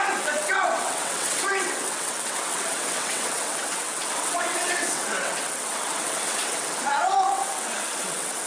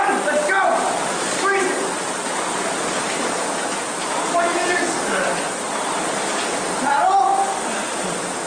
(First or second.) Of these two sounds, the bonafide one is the second